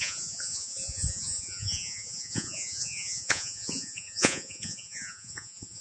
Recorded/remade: remade